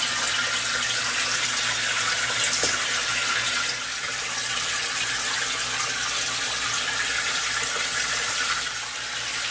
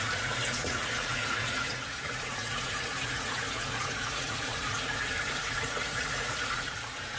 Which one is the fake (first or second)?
second